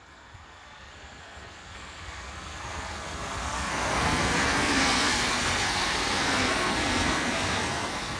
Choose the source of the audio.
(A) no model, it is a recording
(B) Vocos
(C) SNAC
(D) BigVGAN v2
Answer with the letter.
C